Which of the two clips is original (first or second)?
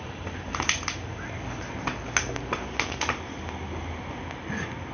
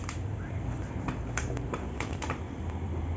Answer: first